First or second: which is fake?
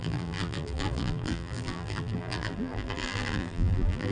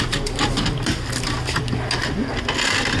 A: first